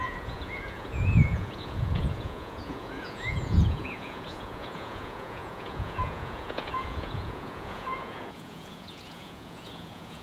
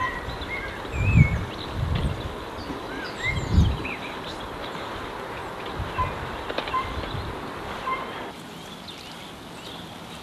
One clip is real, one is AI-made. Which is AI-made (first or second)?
first